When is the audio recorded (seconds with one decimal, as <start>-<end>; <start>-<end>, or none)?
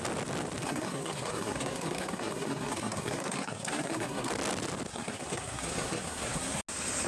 0.0-0.6; 4.3-4.9; 6.6-7.1